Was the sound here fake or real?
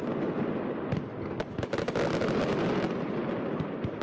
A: real